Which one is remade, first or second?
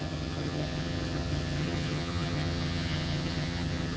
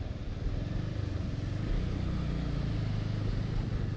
first